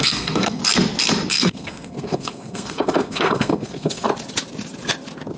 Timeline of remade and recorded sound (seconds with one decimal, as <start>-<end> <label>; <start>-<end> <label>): 0.0-0.6 remade; 0.6-1.3 recorded; 1.3-4.1 remade; 4.1-5.4 recorded